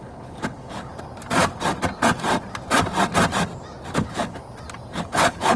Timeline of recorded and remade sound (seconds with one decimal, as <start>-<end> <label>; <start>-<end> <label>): 0.0-0.9 remade; 0.9-4.0 recorded; 4.0-4.4 remade; 4.4-4.9 recorded; 4.9-5.6 remade